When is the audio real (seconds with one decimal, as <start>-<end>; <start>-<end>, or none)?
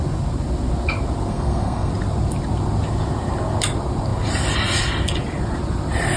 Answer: 0.0-1.3; 1.9-6.2